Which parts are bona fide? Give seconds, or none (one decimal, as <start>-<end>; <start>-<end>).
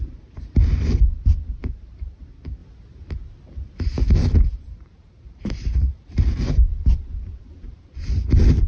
0.0-1.6; 2.2-4.4; 6.3-6.7; 8.1-8.7